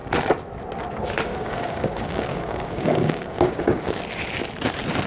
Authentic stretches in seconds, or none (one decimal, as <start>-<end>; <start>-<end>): 0.0-1.3; 4.0-5.1